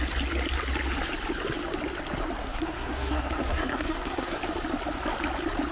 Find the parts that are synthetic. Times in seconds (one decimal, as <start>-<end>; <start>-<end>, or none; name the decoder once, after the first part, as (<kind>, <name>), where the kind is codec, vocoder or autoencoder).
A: 2.4-4.4 (codec, SNAC)

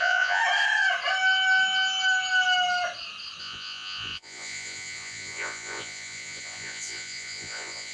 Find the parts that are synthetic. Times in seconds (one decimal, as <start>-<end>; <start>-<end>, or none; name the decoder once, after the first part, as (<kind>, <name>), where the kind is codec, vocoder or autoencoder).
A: 0.0-0.4 (vocoder, Vocos); 3.4-7.9

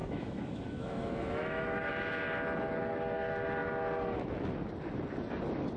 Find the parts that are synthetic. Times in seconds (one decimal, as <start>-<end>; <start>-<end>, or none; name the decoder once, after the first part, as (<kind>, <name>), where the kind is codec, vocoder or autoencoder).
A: 0.0-1.9 (autoencoder, DAC-VAE)

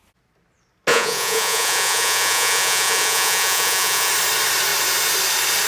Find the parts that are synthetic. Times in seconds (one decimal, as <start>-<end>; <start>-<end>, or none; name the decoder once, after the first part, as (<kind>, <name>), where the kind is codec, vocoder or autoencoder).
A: 0.9-4.1 (vocoder, Vocos)

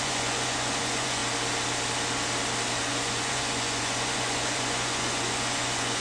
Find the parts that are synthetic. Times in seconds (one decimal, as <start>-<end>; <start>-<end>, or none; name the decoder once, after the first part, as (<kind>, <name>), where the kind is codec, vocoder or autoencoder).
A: 0.0-1.2 (vocoder, Vocos); 2.8-6.0

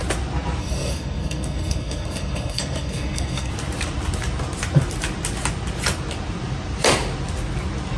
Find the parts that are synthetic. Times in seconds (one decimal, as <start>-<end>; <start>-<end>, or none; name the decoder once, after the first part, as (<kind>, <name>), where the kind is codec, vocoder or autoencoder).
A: 0.6-3.5 (codec, SNAC)

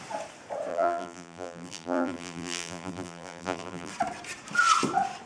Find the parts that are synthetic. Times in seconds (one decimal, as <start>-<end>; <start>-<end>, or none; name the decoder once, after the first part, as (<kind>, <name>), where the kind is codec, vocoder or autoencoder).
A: 0.7-3.9 (vocoder, BigVGAN v2)